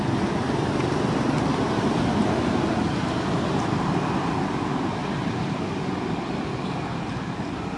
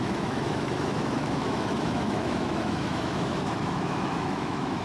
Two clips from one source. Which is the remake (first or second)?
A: second